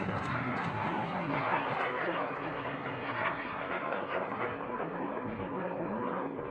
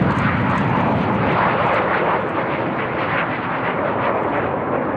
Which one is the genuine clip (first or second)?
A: second